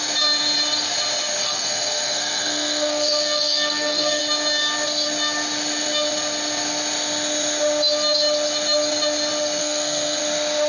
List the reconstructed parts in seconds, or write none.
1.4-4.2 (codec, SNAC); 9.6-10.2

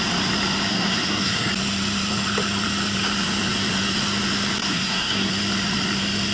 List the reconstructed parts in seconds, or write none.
0.7-1.5 (codec, SNAC); 4.6-5.3

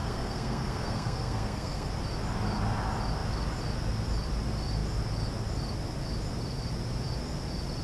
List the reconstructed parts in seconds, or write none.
0.0-1.9 (codec, SNAC)

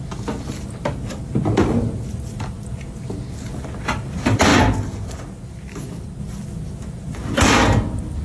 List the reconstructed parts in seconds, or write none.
none

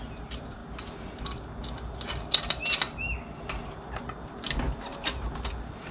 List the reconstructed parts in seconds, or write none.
none